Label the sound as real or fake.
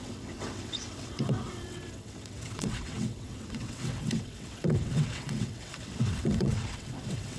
fake